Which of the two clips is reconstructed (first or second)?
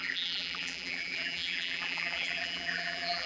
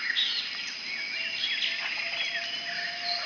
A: first